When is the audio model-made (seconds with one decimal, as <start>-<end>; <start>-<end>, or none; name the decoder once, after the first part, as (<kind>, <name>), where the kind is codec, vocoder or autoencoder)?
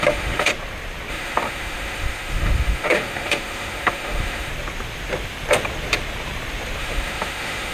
0.0-0.5 (autoencoder, DAC-VAE); 1.1-4.5; 6.8-7.7